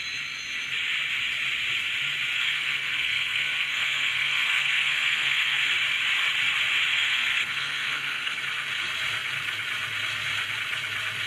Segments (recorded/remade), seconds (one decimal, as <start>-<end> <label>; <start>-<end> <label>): 0.0-2.4 recorded; 2.4-5.6 remade; 5.6-6.9 recorded; 6.9-8.4 remade; 8.4-11.3 recorded